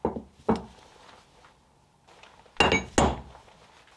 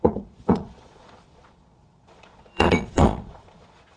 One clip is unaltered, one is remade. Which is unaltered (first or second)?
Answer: first